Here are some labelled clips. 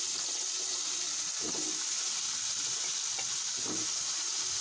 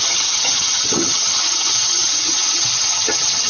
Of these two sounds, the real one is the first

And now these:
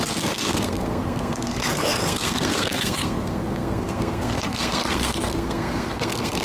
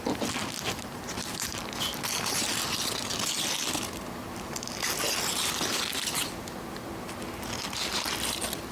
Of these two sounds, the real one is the second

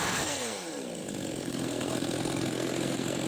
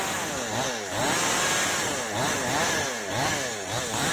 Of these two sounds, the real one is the second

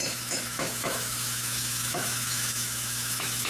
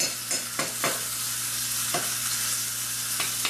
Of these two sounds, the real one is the second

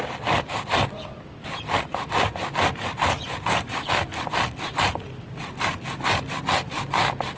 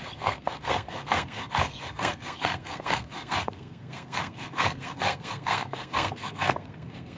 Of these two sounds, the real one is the first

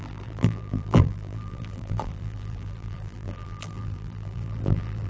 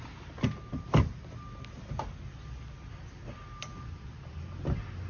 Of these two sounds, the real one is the second